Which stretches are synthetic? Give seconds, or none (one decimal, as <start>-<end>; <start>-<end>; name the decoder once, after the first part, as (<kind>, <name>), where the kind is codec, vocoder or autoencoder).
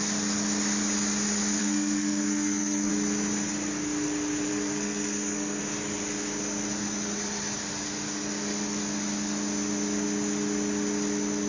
1.6-2.9 (codec, SNAC); 4.5-5.6